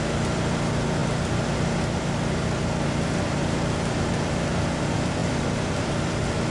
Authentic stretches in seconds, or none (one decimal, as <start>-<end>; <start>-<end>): 0.0-1.0; 3.4-5.2; 5.7-6.5